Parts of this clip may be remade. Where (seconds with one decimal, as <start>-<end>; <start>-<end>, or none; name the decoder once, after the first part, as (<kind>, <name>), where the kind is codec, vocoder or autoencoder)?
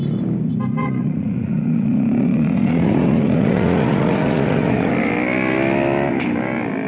0.8-4.9 (vocoder, Vocos)